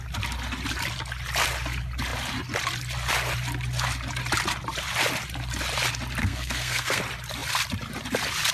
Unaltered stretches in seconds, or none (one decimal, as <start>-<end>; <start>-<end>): 0.0-6.2; 7.0-8.5

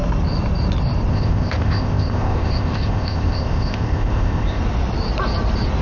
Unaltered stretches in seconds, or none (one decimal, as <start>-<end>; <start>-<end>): 0.0-1.1; 4.6-5.8

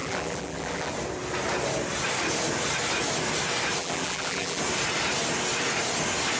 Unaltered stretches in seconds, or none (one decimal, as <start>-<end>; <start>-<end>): 0.9-3.8; 4.6-6.4

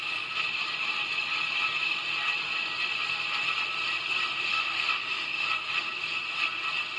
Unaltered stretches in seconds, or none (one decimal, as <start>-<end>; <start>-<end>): 0.0-4.5; 5.5-7.0

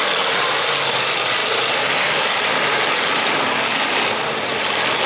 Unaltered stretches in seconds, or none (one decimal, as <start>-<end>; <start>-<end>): 0.0-5.1

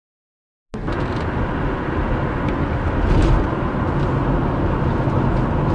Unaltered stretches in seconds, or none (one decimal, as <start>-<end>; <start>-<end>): 0.0-5.7

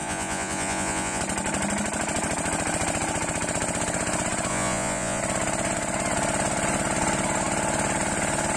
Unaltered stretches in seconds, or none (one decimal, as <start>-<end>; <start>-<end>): 1.2-4.5; 5.2-8.6

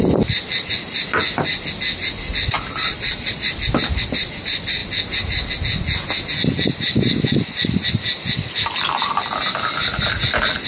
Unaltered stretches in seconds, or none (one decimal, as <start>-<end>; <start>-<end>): 0.0-2.8; 3.5-10.7